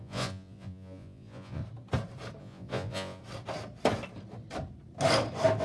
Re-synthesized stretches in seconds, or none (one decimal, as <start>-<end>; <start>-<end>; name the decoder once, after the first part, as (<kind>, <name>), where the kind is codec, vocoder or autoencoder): 0.0-1.6 (vocoder, Vocos); 2.4-3.2